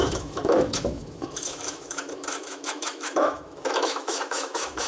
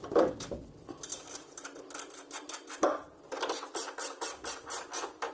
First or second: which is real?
second